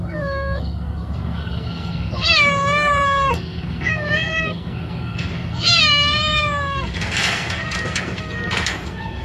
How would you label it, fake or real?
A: fake